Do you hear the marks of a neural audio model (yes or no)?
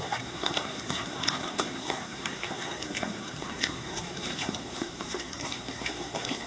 yes